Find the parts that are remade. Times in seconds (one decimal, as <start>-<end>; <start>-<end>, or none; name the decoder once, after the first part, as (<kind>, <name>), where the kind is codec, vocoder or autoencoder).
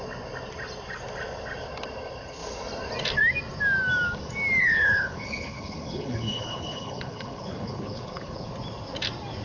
4.6-8.5 (codec, HILCodec)